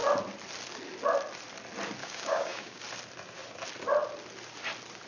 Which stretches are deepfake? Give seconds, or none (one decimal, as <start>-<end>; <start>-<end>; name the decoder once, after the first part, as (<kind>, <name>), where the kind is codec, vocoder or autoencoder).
2.0-2.8 (codec, DAC)